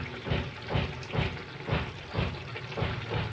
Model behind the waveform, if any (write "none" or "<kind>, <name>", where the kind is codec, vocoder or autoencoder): none